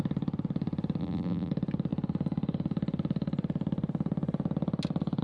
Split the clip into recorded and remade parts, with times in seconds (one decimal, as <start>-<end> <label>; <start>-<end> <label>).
0.0-1.0 recorded; 1.0-1.5 remade; 1.5-5.2 recorded